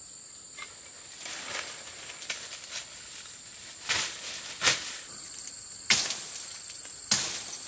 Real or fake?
real